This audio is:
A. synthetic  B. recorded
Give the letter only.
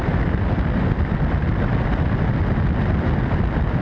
B